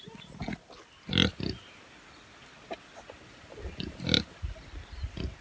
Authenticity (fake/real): real